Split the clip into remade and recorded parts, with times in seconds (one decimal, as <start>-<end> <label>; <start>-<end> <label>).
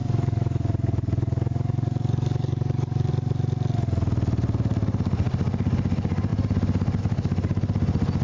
0.0-3.1 remade; 3.1-8.2 recorded